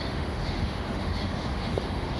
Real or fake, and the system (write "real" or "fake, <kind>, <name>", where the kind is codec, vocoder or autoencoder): fake, autoencoder, DAC-VAE